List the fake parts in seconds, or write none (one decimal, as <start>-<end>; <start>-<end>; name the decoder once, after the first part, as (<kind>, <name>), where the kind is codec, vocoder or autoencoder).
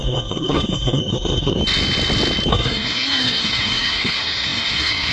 0.0-1.6 (codec, SNAC); 2.5-5.1